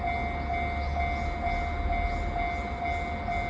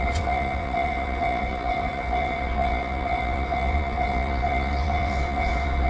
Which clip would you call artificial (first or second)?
second